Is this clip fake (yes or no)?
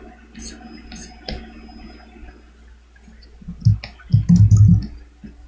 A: no